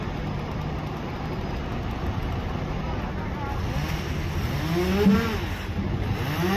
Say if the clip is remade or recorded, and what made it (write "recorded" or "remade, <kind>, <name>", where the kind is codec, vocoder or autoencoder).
recorded